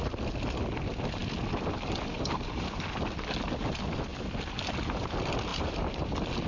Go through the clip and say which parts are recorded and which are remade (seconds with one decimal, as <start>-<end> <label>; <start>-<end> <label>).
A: 0.0-5.5 recorded; 5.5-6.1 remade; 6.1-6.5 recorded